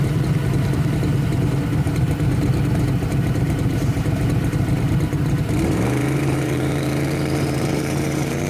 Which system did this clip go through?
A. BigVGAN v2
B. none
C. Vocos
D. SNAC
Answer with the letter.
A